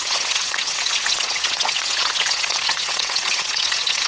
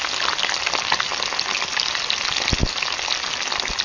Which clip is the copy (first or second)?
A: first